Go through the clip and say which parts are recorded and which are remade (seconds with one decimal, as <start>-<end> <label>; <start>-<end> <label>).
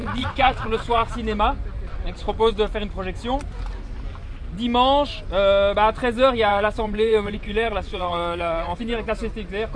0.0-1.1 remade; 1.1-1.9 recorded; 1.9-2.5 remade; 2.5-6.5 recorded; 6.5-8.8 remade; 8.8-9.8 recorded